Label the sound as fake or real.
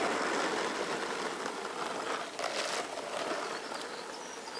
real